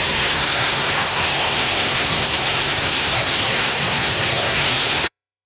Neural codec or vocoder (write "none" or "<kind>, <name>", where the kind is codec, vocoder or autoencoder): codec, SNAC